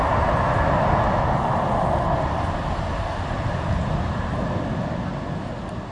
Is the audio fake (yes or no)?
no